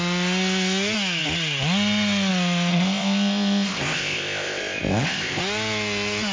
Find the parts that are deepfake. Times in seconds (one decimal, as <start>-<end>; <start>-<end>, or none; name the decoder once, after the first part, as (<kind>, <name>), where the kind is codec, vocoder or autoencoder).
2.7-5.4 (codec, ZipCodec)